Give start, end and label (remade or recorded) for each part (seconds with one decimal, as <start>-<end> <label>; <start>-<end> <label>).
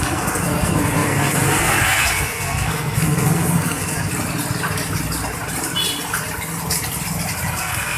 0.0-4.1 remade; 4.1-7.5 recorded; 7.5-8.0 remade